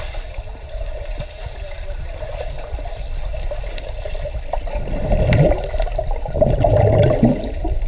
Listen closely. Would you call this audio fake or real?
real